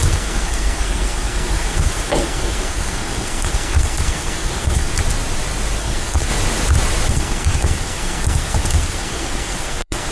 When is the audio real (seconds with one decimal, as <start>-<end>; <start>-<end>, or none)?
4.9-5.8; 6.3-7.1